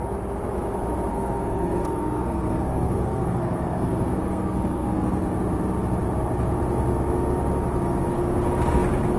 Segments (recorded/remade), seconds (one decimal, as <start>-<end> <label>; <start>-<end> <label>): 0.0-1.1 recorded; 1.1-5.2 remade; 5.2-9.2 recorded